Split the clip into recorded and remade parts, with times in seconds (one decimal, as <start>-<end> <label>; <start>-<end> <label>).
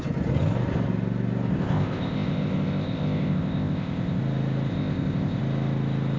0.0-1.5 recorded; 1.5-4.2 remade; 4.2-4.7 recorded; 4.7-5.4 remade; 5.4-6.2 recorded